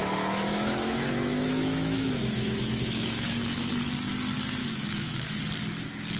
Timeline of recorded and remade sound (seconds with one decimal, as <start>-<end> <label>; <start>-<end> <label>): 0.0-3.7 remade; 3.7-4.6 recorded; 4.6-5.4 remade; 5.4-6.2 recorded